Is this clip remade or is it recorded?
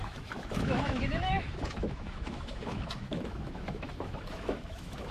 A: remade